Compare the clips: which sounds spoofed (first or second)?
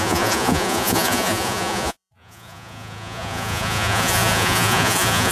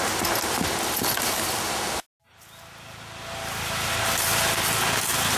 first